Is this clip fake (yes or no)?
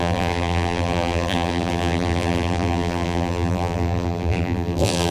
yes